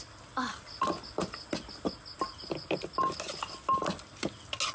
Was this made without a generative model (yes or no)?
yes